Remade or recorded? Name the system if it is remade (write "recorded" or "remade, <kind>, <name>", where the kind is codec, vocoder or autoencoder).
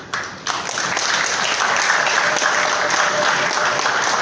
recorded